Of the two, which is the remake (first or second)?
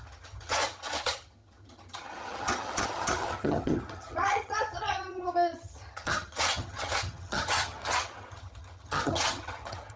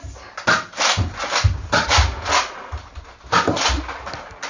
first